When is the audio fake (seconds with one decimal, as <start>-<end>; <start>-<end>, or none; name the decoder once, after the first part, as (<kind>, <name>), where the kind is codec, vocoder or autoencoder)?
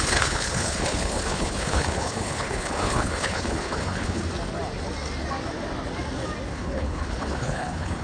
0.0-4.2 (codec, HILCodec); 6.5-8.0